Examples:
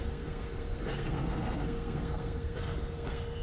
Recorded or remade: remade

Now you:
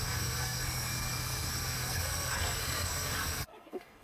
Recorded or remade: remade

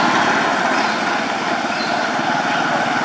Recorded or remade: recorded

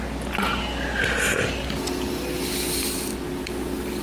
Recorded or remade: recorded